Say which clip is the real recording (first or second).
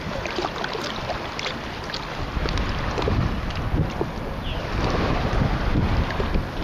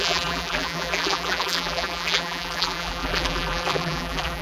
first